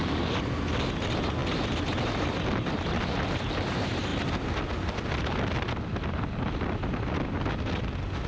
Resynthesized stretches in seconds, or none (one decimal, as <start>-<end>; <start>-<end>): none